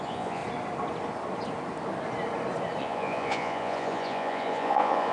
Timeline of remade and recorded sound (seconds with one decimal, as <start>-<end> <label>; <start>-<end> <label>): 0.0-0.4 remade; 0.4-2.8 recorded; 2.8-5.1 remade